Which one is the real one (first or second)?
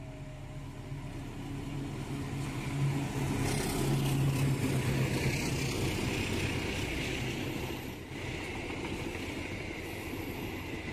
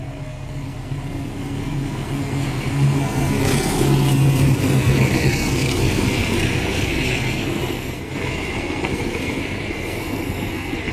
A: first